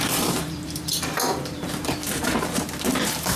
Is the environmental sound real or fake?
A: fake